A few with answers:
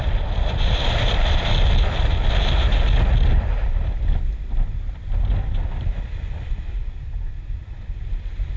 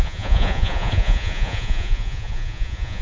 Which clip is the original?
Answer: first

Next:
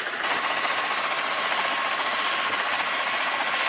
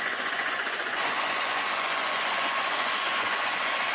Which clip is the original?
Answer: first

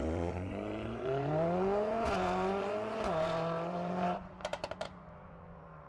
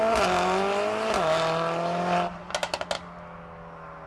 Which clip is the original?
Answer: second